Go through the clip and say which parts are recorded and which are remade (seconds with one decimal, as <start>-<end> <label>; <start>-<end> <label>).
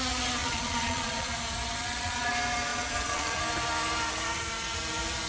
0.0-0.4 recorded; 0.4-1.3 remade; 1.3-1.8 recorded; 1.8-2.3 remade; 2.3-2.7 recorded; 2.7-3.4 remade; 3.4-5.3 recorded